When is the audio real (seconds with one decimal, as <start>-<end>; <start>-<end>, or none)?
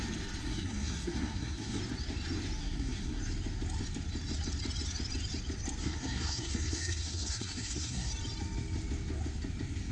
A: 0.0-0.4; 1.8-2.6; 3.2-5.8; 8.1-9.9